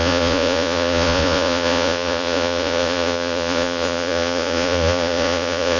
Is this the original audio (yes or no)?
no